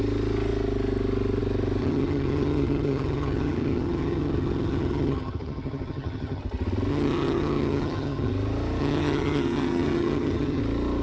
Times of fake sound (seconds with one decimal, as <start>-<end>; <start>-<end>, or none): 1.8-6.4; 6.9-8.3; 8.8-10.6